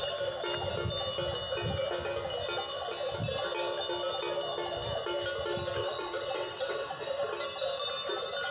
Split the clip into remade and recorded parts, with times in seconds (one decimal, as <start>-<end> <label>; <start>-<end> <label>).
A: 0.0-5.8 recorded; 5.8-7.0 remade; 7.0-8.5 recorded